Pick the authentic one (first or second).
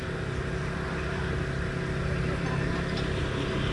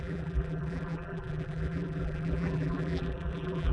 first